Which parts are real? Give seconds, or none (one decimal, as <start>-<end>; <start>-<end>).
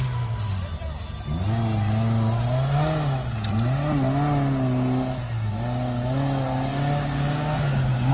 0.0-6.7